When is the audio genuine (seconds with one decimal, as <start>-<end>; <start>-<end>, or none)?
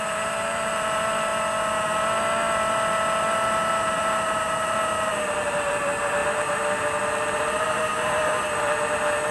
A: 1.3-3.7